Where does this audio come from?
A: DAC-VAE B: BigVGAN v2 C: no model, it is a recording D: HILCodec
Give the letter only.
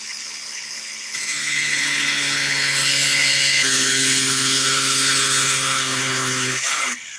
D